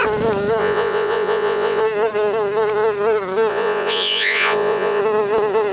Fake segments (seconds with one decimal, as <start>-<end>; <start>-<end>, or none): 0.6-1.8; 3.5-5.0